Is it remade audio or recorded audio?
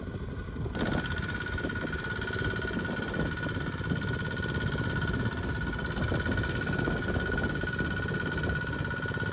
recorded